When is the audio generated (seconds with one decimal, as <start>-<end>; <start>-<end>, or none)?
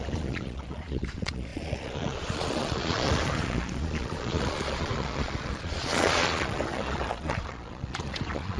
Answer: 0.0-8.6